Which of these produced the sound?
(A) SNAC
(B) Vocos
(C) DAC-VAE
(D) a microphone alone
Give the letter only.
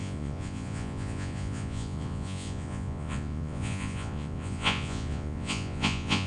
B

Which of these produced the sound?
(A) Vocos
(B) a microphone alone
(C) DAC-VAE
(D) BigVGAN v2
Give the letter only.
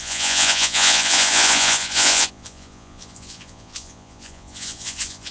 A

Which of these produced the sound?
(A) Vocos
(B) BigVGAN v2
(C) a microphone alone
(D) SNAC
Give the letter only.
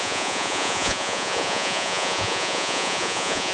A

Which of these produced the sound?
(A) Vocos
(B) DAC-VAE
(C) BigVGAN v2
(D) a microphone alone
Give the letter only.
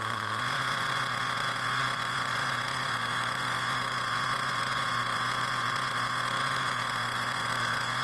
A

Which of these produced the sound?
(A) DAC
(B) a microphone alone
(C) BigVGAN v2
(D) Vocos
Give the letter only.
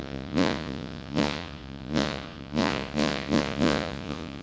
D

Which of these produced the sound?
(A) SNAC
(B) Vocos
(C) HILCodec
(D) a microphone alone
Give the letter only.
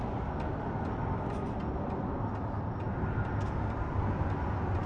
D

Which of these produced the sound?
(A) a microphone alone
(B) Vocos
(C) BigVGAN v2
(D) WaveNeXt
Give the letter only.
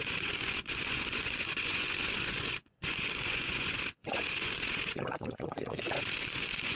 B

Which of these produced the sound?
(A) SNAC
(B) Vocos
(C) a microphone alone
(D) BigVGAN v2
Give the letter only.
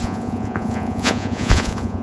B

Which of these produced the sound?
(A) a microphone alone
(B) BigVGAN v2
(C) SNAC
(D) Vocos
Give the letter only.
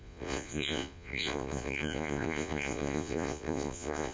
D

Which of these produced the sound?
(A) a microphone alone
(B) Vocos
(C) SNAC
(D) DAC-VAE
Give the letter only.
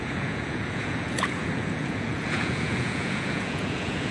B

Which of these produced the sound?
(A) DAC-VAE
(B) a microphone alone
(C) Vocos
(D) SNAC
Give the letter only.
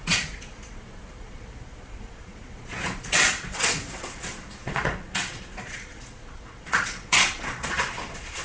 C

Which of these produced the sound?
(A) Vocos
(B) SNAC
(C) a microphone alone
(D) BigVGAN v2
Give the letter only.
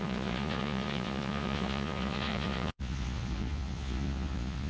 A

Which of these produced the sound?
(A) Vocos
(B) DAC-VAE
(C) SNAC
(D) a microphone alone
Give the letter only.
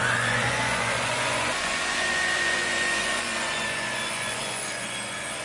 A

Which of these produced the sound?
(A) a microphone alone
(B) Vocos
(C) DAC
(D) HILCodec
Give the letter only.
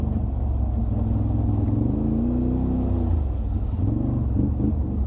A